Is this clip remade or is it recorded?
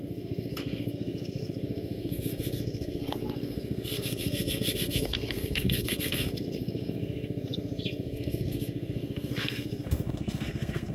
remade